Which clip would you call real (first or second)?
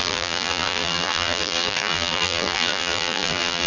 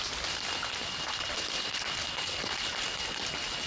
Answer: second